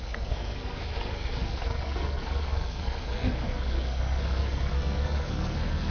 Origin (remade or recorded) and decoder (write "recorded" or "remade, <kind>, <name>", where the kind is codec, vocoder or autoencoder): remade, codec, SNAC